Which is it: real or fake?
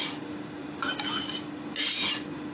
real